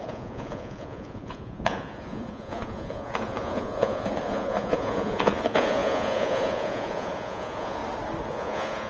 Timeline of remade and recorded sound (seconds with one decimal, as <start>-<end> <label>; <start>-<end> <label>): 0.0-7.8 remade; 7.8-8.3 recorded; 8.3-8.9 remade